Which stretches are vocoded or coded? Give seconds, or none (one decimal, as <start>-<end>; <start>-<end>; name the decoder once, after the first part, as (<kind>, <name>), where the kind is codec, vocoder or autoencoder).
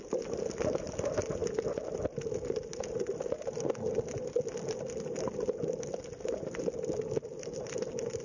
none